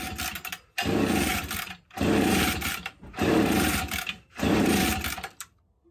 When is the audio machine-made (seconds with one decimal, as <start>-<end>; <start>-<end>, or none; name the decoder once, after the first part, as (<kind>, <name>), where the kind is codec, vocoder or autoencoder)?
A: 1.3-4.8 (vocoder, BigVGAN v2)